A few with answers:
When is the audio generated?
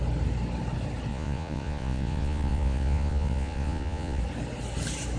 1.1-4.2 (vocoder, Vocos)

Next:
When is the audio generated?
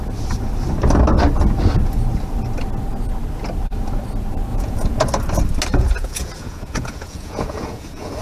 4.5-5.0 (vocoder, Vocos); 5.7-8.2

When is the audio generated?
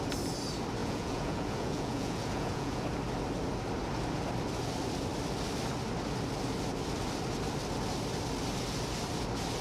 0.8-2.8 (vocoder, Vocos)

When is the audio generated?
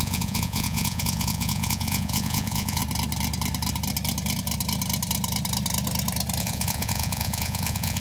0.0-2.8 (vocoder, Vocos); 6.4-8.0